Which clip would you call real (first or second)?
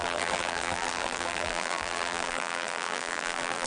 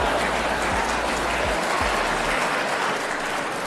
second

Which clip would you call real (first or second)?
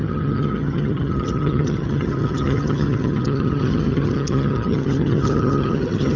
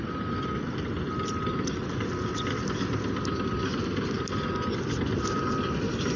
second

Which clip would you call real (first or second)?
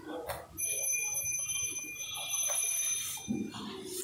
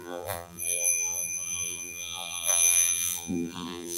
first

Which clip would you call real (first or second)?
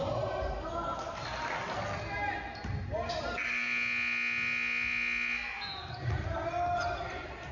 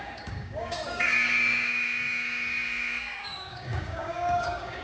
first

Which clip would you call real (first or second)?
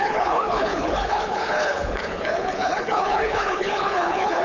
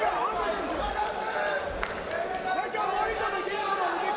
second